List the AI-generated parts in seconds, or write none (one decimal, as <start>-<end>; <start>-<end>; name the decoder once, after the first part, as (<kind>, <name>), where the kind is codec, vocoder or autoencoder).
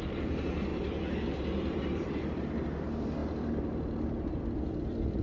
0.0-5.2 (vocoder, BigVGAN v2)